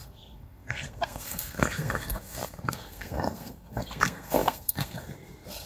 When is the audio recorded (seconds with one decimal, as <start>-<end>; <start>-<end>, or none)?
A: none

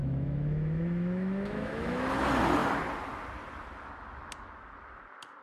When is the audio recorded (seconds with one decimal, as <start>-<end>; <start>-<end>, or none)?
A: 2.0-5.4

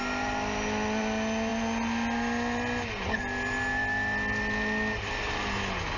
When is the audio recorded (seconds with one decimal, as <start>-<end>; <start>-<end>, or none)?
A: 0.0-6.0

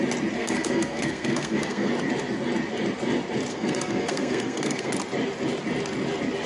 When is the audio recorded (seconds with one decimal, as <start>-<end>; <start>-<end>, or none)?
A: 0.0-0.4; 1.9-3.5; 4.9-6.5

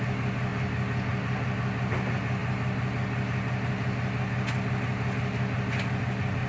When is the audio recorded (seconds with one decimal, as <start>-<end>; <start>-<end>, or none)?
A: 0.0-6.5